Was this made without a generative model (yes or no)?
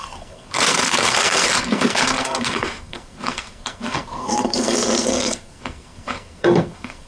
no